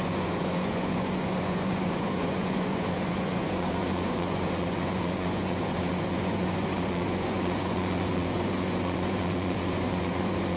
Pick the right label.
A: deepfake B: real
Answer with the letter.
A